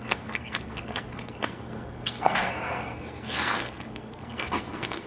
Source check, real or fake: fake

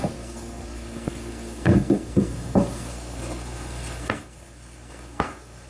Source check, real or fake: fake